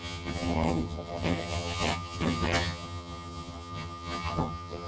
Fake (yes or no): yes